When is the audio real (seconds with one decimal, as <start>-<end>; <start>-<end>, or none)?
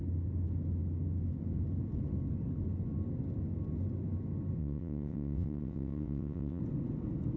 0.0-4.6; 6.6-7.4